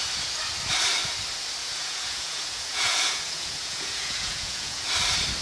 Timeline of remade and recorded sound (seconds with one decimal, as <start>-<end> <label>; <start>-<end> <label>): 0.0-1.6 recorded; 1.6-4.8 remade; 4.8-5.4 recorded